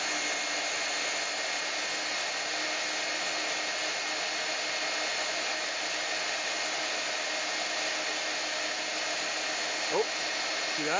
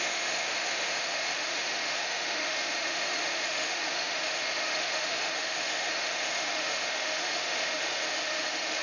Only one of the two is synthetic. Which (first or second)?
second